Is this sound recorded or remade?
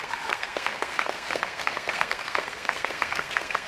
remade